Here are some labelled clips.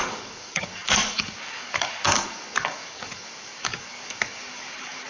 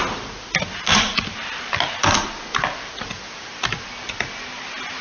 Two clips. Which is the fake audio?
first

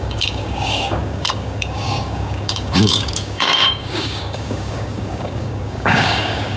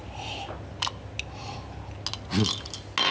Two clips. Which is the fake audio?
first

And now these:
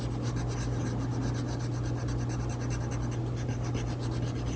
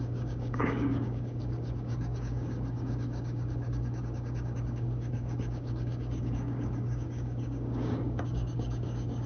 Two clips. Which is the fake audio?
second